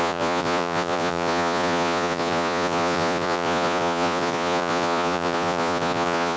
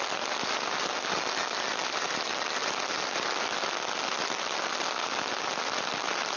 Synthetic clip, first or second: first